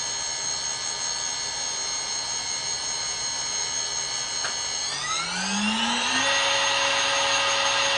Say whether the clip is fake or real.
real